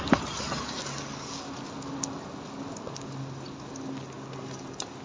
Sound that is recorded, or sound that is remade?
recorded